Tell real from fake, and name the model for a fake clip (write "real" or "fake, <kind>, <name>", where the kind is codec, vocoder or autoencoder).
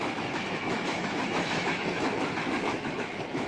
fake, autoencoder, DAC-VAE